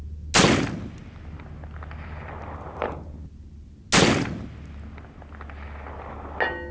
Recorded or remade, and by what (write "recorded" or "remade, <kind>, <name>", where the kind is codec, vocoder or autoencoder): recorded